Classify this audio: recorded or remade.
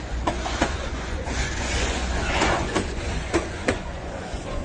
remade